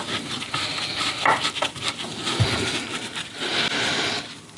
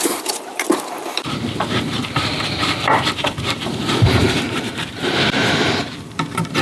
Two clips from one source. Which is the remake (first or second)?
second